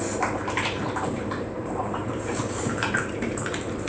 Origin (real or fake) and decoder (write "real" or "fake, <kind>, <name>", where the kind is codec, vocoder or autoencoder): fake, vocoder, BigVGAN v2